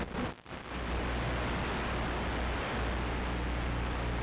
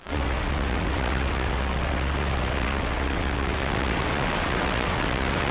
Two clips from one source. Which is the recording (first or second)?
first